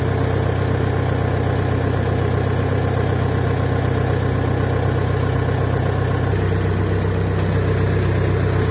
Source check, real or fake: real